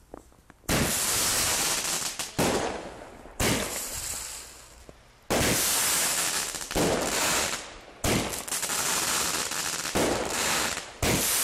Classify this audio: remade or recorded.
recorded